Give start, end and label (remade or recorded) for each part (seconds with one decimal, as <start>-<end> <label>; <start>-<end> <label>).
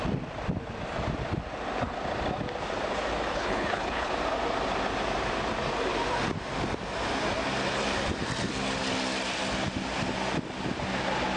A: 0.0-3.3 recorded; 3.3-4.1 remade; 4.1-11.4 recorded